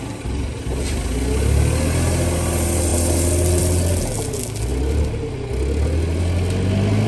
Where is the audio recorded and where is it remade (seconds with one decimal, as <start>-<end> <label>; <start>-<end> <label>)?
0.0-7.1 recorded